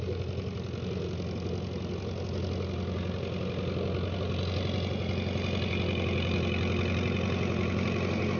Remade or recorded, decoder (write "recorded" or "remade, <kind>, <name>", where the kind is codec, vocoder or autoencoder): recorded